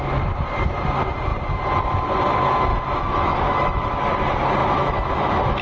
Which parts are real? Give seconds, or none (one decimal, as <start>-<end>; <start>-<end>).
0.0-2.7; 3.9-4.6